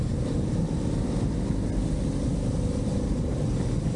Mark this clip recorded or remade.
recorded